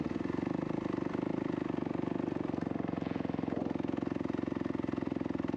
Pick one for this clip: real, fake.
real